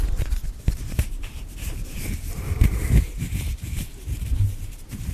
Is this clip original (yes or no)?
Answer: no